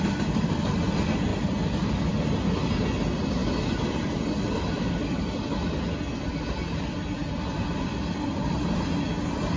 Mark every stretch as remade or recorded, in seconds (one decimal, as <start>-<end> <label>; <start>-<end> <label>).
0.0-9.6 recorded